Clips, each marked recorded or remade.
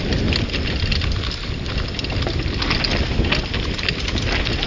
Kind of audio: recorded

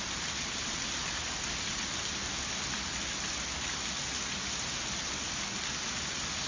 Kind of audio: recorded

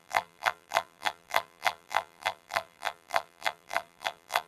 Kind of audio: remade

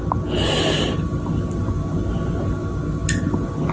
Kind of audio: recorded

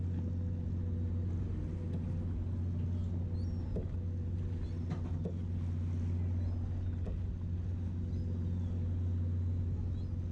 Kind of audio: recorded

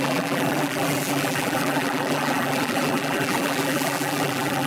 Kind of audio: remade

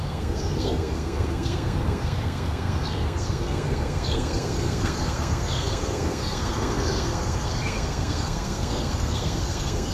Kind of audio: remade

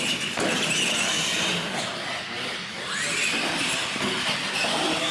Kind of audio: recorded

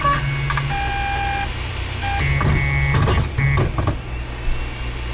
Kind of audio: recorded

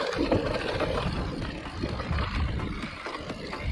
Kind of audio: remade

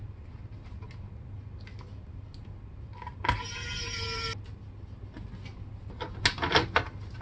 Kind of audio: recorded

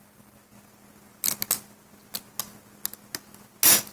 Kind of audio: recorded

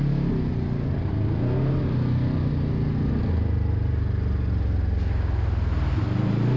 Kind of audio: recorded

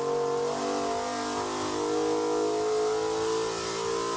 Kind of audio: recorded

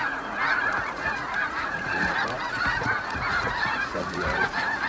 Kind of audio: remade